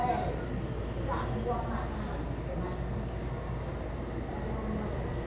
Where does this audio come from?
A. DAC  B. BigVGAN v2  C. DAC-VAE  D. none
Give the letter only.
D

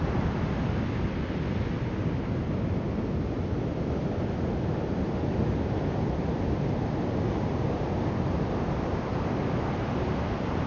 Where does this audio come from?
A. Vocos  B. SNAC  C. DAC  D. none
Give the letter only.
D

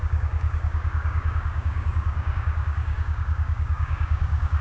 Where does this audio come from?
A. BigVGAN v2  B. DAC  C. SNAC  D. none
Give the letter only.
B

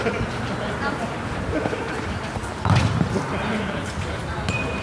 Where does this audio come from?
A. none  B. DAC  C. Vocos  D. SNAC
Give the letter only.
A